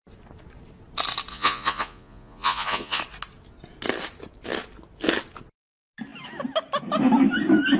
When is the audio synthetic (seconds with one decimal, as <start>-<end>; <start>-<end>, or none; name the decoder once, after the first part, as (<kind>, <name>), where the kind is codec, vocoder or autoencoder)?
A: 1.3-3.0 (vocoder, Vocos)